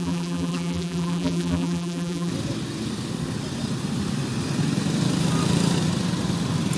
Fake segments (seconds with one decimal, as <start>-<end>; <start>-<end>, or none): 0.0-2.3